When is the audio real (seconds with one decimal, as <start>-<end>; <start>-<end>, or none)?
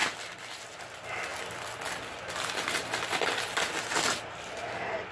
0.0-5.1